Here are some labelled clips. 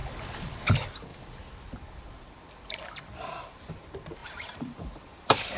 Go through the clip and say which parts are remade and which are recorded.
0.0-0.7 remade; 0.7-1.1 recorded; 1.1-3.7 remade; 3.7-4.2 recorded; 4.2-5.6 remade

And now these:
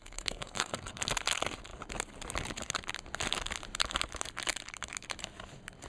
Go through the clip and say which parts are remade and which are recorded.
0.0-1.0 remade; 1.0-5.9 recorded

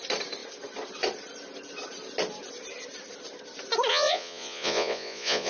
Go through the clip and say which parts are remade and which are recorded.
0.0-3.9 recorded; 3.9-5.5 remade